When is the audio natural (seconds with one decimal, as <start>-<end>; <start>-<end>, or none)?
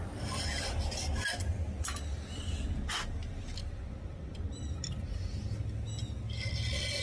0.0-7.0